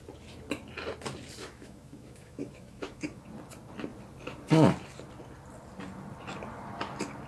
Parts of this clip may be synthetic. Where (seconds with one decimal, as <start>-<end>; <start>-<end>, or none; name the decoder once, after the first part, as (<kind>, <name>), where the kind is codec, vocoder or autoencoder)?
1.4-3.2 (autoencoder, DAC-VAE)